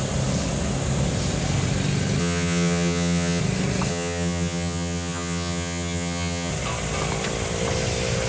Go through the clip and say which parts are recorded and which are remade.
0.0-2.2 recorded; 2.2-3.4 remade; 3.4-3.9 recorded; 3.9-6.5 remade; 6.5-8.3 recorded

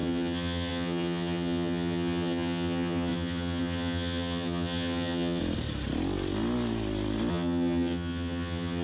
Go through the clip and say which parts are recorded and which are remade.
0.0-5.4 remade; 5.4-7.3 recorded; 7.3-8.8 remade

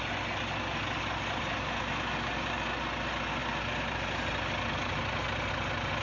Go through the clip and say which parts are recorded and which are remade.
0.0-6.0 recorded

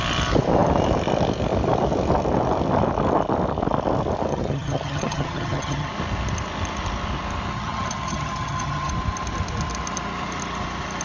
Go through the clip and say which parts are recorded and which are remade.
0.0-4.3 recorded; 4.3-5.9 remade; 5.9-7.5 recorded; 7.5-8.9 remade; 8.9-11.0 recorded

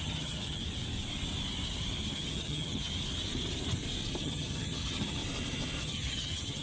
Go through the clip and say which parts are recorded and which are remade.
0.0-0.6 remade; 0.6-2.1 recorded; 2.1-2.9 remade; 2.9-4.2 recorded; 4.2-5.2 remade; 5.2-5.8 recorded; 5.8-6.6 remade